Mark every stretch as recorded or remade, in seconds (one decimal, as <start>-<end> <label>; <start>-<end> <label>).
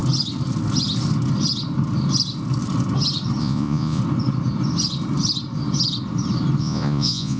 0.0-3.4 recorded; 3.4-4.0 remade; 4.0-6.6 recorded; 6.6-7.4 remade